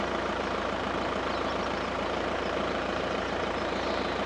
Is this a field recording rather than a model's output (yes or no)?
no